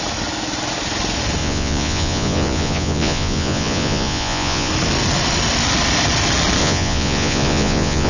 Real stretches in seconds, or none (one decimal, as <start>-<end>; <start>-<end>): 0.0-1.4; 4.7-6.6